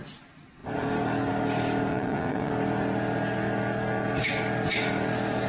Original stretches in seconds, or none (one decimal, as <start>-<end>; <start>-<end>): 0.0-1.9; 2.5-5.5